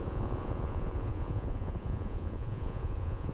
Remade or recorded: remade